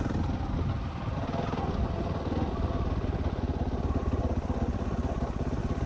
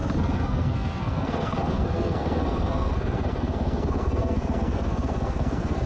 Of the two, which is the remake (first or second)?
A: second